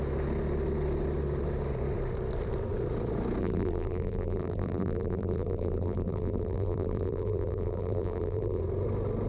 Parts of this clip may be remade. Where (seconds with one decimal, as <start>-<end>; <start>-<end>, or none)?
3.4-8.6